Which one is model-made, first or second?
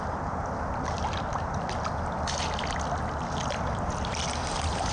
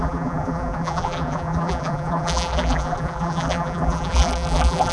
second